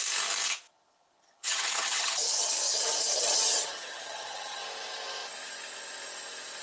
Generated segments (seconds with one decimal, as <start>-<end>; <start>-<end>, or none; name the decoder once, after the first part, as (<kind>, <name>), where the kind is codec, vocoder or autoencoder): 0.7-4.6 (vocoder, HiFi-GAN)